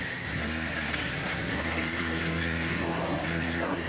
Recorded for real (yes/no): no